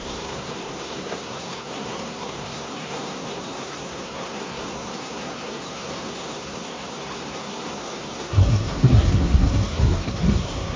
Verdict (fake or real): fake